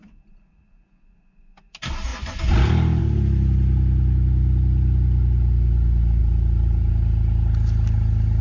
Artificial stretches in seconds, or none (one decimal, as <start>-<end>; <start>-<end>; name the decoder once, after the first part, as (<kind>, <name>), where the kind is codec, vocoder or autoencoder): 6.2-6.9 (vocoder, BigVGAN v2)